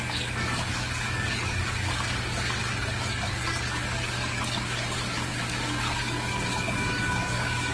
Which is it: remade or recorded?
remade